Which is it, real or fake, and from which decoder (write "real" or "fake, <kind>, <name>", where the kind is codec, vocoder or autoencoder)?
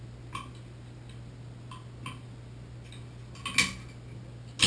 real